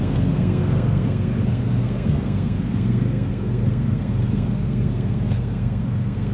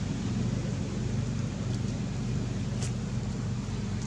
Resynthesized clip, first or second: first